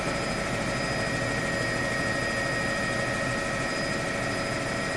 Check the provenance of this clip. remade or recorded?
recorded